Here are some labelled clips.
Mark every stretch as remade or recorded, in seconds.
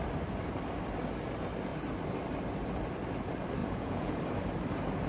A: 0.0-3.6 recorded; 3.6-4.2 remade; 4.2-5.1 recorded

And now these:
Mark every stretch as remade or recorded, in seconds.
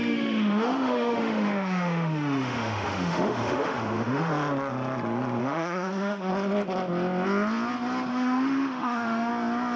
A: 0.0-4.3 remade; 4.3-5.4 recorded; 5.4-6.3 remade; 6.3-8.1 recorded; 8.1-9.3 remade; 9.3-9.8 recorded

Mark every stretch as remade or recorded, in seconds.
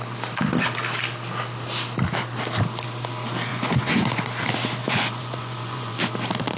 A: 0.0-3.5 recorded; 3.5-4.2 remade; 4.2-4.8 recorded; 4.8-6.0 remade; 6.0-6.6 recorded